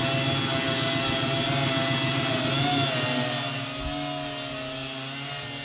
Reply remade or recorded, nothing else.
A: recorded